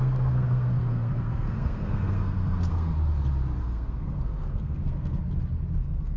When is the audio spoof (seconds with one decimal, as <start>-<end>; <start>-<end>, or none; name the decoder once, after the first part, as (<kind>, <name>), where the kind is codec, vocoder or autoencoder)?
0.0-2.9 (codec, SNAC); 3.6-5.2; 5.8-6.2